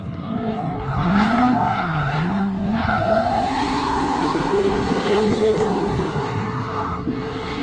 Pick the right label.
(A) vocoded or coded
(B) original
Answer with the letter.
A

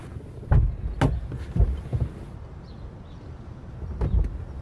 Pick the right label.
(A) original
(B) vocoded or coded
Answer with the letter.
A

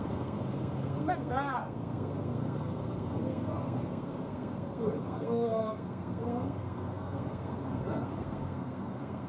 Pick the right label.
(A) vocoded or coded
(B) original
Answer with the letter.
A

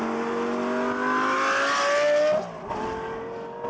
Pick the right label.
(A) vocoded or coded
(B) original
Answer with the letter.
B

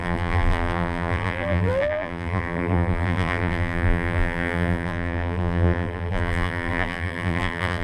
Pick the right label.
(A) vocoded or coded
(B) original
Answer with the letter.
A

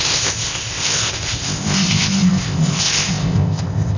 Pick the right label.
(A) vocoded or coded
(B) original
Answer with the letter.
A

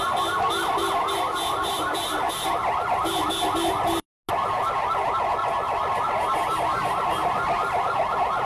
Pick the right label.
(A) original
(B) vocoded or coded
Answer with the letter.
A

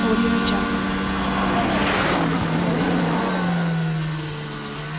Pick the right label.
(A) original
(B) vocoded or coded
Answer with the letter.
A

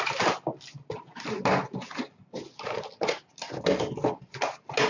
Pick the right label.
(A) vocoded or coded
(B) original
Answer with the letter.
B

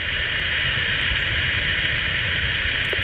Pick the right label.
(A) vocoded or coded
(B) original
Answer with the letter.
A